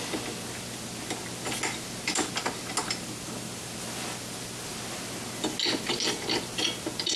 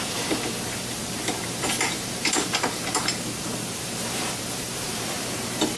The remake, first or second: second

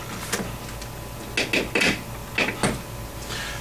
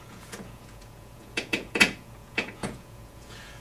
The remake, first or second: second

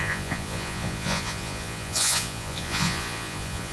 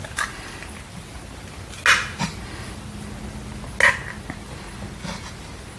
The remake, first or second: first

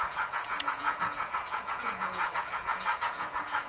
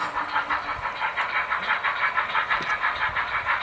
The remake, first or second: first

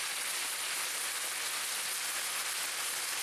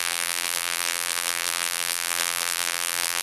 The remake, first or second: second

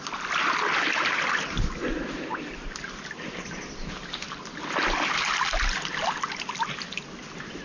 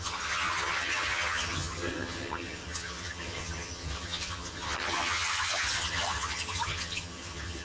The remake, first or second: second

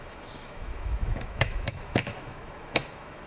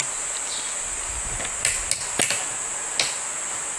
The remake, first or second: first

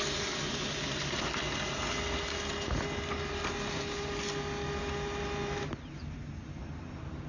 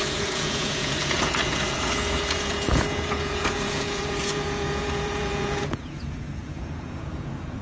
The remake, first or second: second